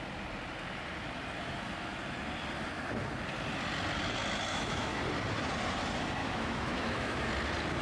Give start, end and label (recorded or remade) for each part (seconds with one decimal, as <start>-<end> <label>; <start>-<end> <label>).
0.0-4.5 recorded; 4.5-5.0 remade; 5.0-6.2 recorded; 6.2-7.3 remade; 7.3-7.8 recorded